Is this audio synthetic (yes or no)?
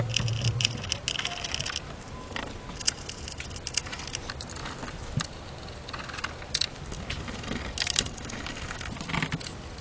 no